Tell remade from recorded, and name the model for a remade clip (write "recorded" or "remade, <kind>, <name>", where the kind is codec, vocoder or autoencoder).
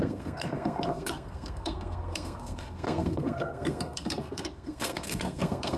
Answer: remade, codec, SNAC